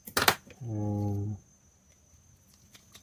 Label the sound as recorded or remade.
recorded